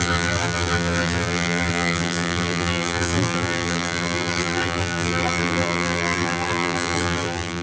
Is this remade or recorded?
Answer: remade